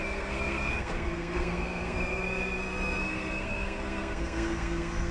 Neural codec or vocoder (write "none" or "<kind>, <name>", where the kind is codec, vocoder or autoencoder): codec, SNAC